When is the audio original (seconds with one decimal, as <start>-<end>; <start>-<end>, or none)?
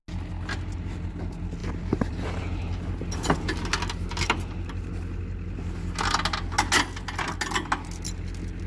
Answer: 0.0-1.6; 2.4-8.7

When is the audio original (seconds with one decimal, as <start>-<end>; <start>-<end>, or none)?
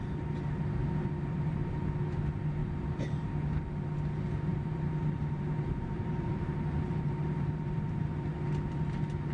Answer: 0.0-0.8; 1.8-2.6; 3.3-4.5; 8.3-9.3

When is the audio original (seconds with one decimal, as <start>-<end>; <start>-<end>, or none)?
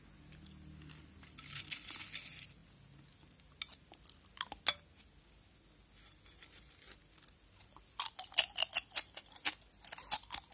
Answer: 0.0-10.5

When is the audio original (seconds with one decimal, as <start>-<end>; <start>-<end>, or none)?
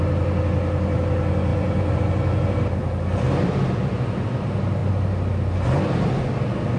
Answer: 0.0-1.5; 2.0-6.8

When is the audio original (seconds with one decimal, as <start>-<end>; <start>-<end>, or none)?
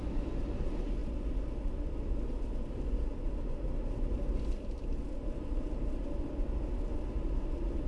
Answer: 0.0-7.9